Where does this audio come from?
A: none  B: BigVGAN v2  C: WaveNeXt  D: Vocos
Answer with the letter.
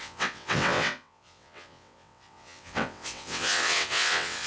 C